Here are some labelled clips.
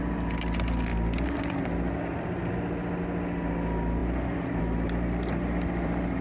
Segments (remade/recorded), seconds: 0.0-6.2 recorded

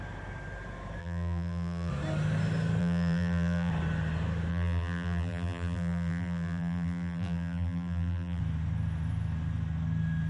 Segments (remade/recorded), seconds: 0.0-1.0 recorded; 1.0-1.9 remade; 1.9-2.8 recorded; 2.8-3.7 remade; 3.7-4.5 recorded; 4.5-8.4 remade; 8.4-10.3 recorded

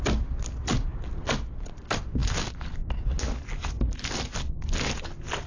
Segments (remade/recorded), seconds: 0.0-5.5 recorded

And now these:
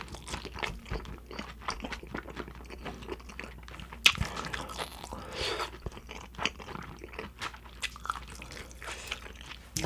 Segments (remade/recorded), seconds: 0.0-4.9 recorded; 4.9-6.9 remade; 6.9-9.9 recorded

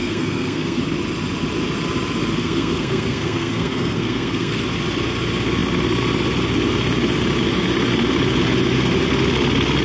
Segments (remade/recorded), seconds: 0.0-0.8 remade; 0.8-2.3 recorded; 2.3-4.6 remade; 4.6-9.8 recorded

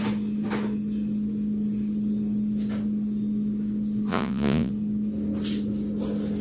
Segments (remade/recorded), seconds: 0.0-4.1 recorded; 4.1-4.7 remade; 4.7-6.4 recorded